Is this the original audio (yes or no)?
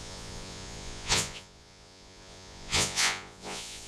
no